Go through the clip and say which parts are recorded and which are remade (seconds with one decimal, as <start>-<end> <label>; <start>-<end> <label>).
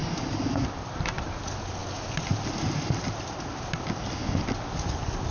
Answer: 0.0-5.3 recorded